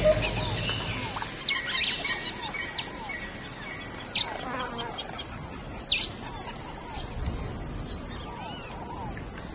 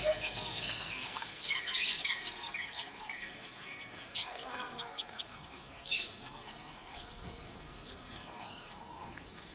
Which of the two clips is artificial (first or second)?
second